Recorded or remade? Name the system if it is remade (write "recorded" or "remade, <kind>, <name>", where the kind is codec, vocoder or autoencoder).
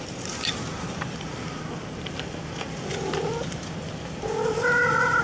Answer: recorded